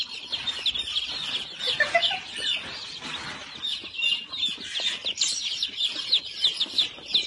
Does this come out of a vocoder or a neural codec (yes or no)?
no